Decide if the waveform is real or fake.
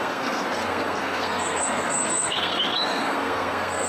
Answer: fake